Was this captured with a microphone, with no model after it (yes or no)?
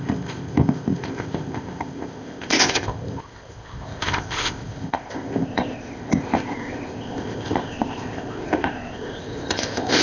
no